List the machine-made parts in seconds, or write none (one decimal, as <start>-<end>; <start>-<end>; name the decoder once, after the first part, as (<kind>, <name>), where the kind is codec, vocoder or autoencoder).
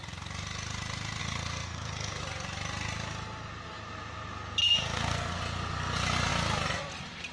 1.2-2.2 (codec, SNAC); 4.6-5.4